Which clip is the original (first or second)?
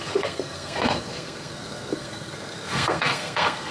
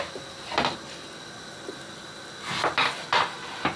second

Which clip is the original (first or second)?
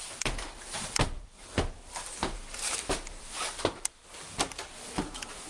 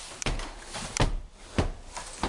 second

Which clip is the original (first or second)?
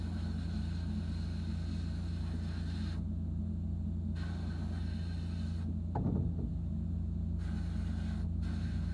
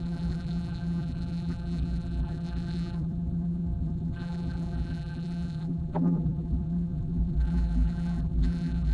first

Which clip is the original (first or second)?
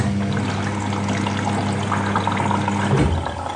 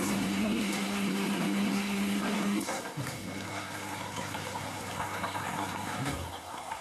first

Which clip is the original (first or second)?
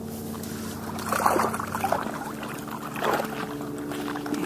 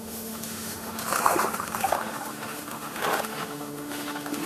first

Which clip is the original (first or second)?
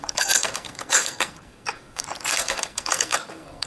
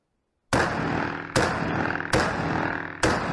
second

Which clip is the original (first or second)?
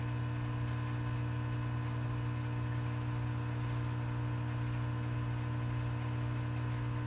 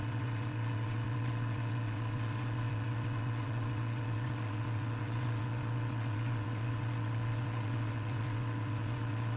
first